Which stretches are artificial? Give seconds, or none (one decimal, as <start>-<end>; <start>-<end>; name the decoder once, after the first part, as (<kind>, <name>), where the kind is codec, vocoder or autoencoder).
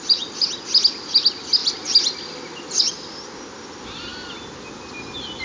none